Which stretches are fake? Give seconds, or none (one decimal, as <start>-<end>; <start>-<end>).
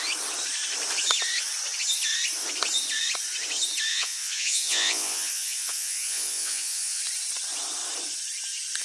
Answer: 3.9-7.0